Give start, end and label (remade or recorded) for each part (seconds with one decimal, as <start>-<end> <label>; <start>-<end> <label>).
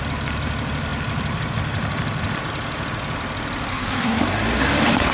0.0-3.7 recorded; 3.7-4.2 remade; 4.2-5.1 recorded